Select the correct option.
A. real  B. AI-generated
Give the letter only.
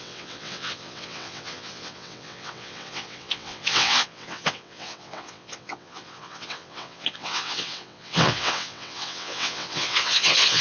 B